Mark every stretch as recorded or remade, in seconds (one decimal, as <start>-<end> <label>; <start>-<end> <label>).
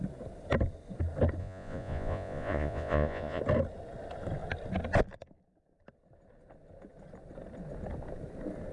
0.0-1.4 recorded; 1.4-3.4 remade; 3.4-8.7 recorded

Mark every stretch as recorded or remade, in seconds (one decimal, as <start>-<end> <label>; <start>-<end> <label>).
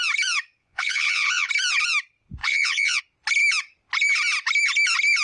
0.0-0.6 recorded; 0.6-1.5 remade; 1.5-2.4 recorded; 2.4-3.0 remade; 3.0-5.2 recorded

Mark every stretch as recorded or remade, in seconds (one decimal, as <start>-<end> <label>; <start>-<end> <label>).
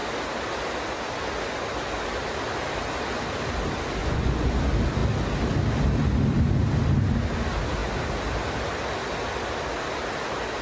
0.0-4.0 recorded; 4.0-4.6 remade; 4.6-10.6 recorded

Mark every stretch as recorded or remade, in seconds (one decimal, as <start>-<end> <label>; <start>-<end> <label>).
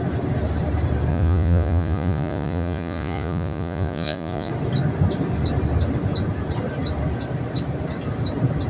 0.0-1.1 recorded; 1.1-4.5 remade; 4.5-8.7 recorded